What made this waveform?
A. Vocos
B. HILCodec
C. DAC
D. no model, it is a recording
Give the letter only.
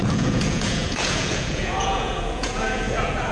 A